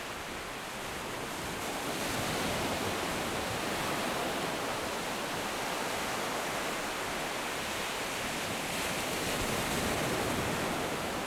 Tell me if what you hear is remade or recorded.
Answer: recorded